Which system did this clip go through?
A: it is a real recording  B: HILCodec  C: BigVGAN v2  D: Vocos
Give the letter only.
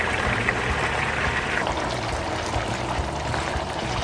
A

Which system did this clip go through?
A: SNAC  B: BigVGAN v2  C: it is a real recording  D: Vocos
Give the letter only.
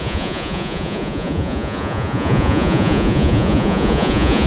D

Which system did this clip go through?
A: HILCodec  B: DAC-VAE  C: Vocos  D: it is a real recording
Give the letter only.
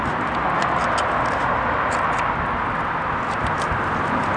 D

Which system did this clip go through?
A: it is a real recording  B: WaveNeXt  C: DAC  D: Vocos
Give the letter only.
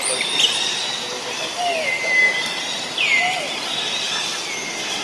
A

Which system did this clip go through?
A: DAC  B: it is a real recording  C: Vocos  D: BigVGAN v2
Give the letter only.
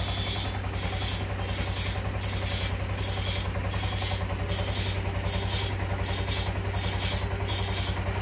B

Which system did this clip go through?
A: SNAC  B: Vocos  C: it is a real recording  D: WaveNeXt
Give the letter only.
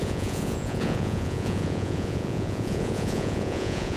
B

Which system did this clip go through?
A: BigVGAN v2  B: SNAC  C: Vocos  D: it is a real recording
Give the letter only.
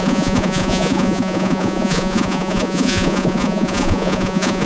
C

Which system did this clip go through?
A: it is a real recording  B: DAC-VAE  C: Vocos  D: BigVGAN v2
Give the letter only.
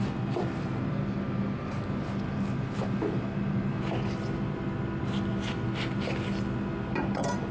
A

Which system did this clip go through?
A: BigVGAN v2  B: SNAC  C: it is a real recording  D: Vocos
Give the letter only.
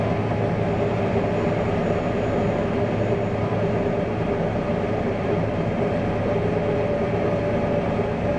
C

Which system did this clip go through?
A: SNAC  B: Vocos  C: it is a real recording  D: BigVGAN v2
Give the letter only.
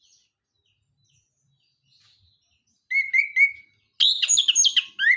C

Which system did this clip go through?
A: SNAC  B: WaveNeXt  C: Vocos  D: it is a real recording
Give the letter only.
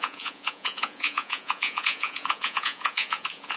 C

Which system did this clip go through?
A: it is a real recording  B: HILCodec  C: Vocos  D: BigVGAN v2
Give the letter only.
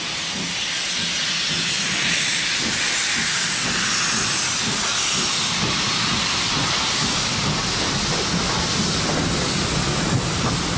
A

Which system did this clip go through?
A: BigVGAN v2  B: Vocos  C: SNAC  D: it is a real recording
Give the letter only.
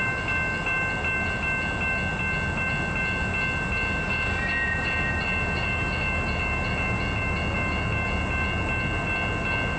D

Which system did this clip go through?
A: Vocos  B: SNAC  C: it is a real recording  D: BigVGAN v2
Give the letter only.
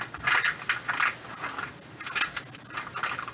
C